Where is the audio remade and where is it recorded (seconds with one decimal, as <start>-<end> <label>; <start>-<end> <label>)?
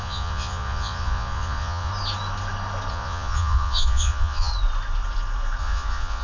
0.0-1.9 remade; 1.9-2.9 recorded; 2.9-4.5 remade; 4.5-5.6 recorded; 5.6-6.2 remade